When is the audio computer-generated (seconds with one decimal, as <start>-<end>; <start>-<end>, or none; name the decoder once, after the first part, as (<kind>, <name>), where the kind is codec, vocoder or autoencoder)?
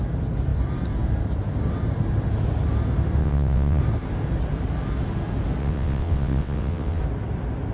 3.2-3.8 (vocoder, WaveNeXt); 5.6-7.0